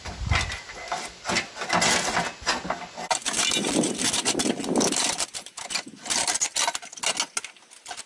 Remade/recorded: recorded